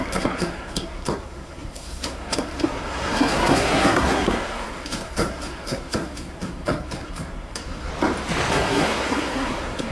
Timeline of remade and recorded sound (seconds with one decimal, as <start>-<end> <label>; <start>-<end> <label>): 0.0-7.9 remade; 7.9-8.5 recorded; 8.5-9.9 remade